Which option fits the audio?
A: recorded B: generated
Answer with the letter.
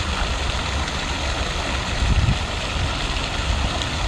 A